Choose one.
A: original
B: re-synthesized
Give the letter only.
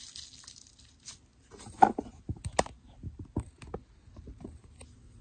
A